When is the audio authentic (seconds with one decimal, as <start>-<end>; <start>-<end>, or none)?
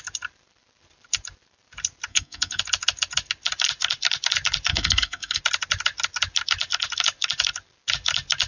0.0-2.1; 2.6-4.7; 5.4-8.5